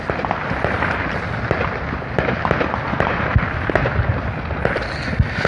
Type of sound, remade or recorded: recorded